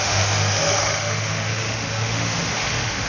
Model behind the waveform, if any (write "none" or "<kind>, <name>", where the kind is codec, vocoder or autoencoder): autoencoder, DAC-VAE